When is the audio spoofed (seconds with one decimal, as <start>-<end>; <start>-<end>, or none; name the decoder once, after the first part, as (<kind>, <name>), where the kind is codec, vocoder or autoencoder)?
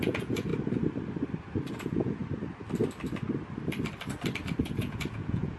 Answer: 0.0-0.5 (vocoder, Vocos); 1.7-2.2; 4.6-5.6